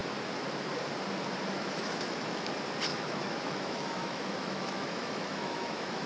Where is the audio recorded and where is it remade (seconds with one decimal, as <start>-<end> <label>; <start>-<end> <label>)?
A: 0.0-1.5 recorded; 1.5-2.5 remade; 2.5-2.9 recorded; 2.9-6.1 remade